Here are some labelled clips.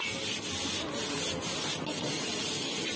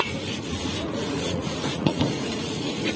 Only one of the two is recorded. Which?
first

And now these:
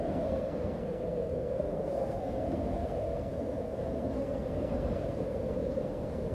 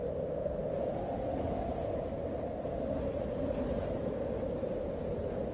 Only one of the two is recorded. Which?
second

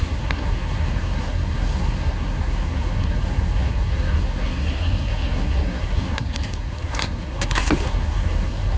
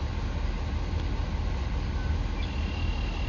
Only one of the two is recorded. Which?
second